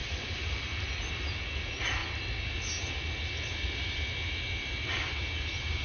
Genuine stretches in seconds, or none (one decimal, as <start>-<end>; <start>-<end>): 0.0-5.8